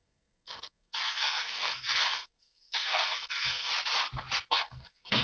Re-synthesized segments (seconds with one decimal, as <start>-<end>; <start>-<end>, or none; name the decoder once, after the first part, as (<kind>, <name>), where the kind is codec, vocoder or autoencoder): 0.0-3.7 (codec, SNAC); 4.5-5.2